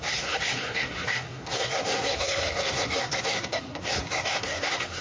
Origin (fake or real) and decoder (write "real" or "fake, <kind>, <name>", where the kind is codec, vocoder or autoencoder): fake, codec, SNAC